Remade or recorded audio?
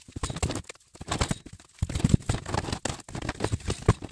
recorded